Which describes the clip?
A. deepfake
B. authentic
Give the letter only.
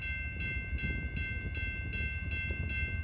B